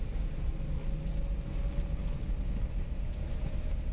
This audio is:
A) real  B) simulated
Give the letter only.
A